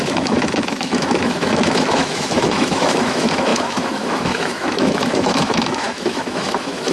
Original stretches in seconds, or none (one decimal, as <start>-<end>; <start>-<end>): none